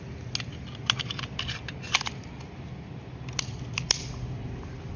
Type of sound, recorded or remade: recorded